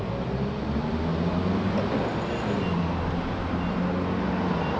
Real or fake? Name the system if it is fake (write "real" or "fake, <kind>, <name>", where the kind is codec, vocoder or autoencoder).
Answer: real